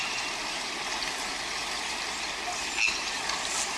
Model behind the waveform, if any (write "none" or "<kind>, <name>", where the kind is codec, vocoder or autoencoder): none